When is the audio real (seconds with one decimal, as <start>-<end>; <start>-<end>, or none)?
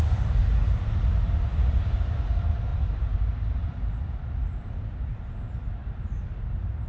0.0-0.4; 2.0-2.7; 4.6-5.8; 6.4-6.9